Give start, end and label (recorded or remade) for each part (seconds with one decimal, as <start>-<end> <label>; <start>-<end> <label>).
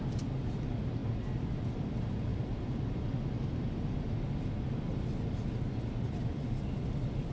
0.0-1.0 recorded; 1.0-1.9 remade; 1.9-6.3 recorded; 6.3-7.3 remade